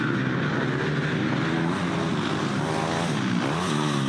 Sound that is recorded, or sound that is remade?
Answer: recorded